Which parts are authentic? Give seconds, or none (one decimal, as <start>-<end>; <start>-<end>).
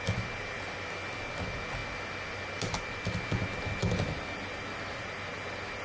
0.0-5.8